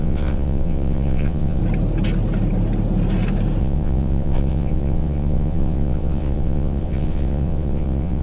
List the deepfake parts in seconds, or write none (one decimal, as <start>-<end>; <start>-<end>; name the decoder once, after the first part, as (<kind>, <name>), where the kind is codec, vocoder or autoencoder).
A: 0.0-1.6 (vocoder, WaveNeXt); 3.6-8.2